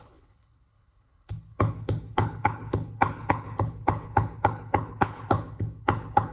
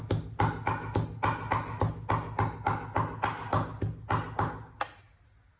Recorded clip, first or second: second